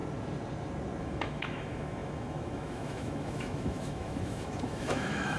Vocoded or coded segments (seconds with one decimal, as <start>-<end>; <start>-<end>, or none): 1.0-5.4